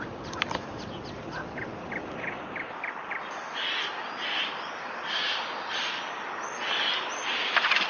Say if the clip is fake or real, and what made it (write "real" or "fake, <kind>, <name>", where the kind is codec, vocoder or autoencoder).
real